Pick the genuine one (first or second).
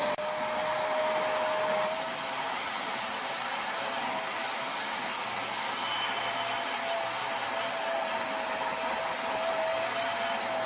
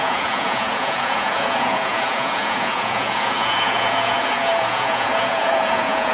first